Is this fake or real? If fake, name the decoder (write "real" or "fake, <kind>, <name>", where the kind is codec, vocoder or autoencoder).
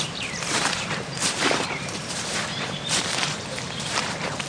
fake, vocoder, BigVGAN v2